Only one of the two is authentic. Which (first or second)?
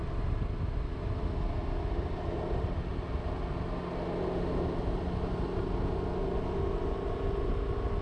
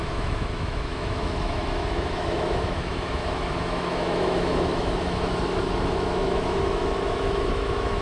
first